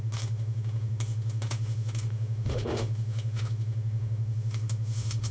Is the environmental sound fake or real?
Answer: fake